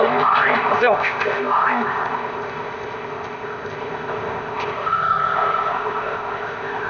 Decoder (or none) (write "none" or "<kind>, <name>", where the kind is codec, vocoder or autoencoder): codec, ZipCodec